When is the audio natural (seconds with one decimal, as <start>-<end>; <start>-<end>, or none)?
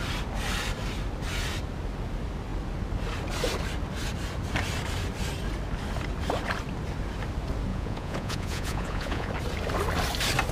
0.0-7.7; 9.3-10.5